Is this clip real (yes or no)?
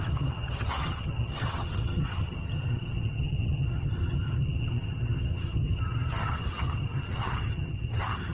no